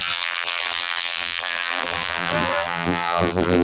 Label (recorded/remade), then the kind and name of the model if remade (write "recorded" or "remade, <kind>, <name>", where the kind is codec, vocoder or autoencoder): remade, vocoder, BigVGAN v2